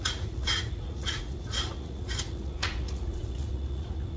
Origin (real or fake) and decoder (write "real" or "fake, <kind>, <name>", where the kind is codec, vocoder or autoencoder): fake, vocoder, Vocos